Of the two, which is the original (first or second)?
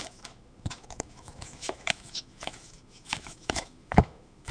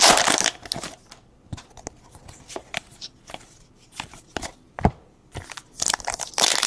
second